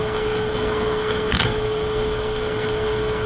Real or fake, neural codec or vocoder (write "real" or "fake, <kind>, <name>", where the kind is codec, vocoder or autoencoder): fake, codec, SNAC